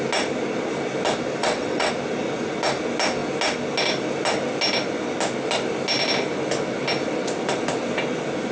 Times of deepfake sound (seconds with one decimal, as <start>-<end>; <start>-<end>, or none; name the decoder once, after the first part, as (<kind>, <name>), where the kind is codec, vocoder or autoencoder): 1.4-1.9 (vocoder, WaveNeXt)